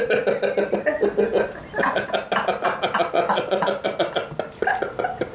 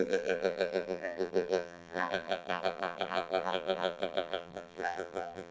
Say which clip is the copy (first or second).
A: second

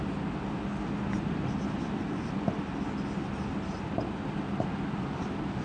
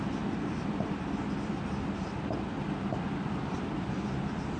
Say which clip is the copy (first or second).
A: second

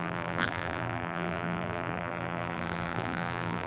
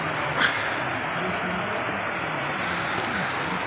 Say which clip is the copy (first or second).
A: first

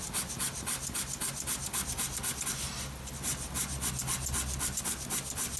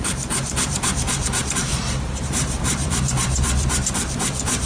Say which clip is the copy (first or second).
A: second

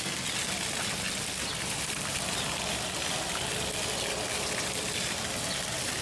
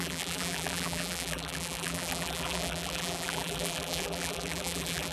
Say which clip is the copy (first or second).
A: second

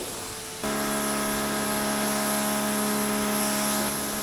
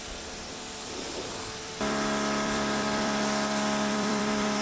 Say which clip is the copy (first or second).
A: second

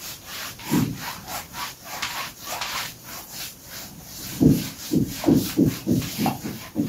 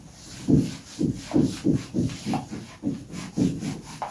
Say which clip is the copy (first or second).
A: first